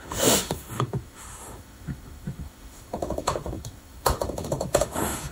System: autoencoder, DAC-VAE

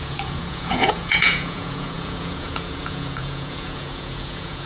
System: vocoder, Vocos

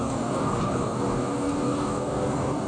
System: codec, DAC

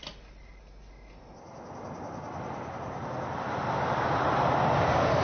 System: none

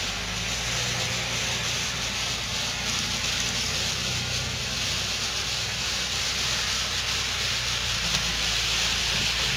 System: none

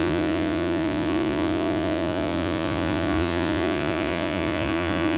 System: vocoder, Vocos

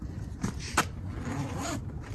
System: none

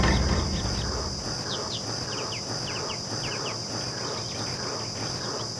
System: none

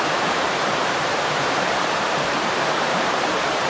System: vocoder, BigVGAN v2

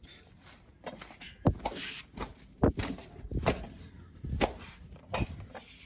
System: vocoder, BigVGAN v2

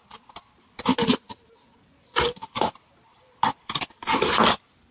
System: none